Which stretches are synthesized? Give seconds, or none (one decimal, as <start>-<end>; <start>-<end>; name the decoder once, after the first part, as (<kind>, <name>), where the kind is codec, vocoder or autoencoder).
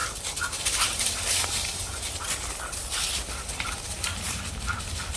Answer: none